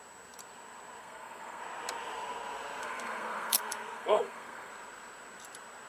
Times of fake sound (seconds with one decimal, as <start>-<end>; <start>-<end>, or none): 1.0-1.6; 2.8-4.7